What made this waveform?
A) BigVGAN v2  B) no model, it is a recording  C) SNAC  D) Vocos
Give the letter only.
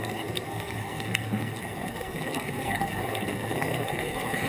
C